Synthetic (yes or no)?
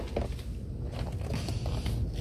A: no